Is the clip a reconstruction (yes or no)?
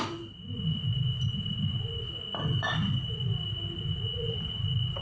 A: no